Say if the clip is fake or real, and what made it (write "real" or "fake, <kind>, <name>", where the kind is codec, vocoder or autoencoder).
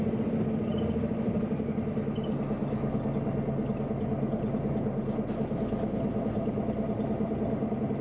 real